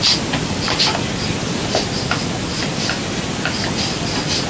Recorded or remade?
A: recorded